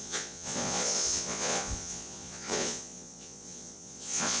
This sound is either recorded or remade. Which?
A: remade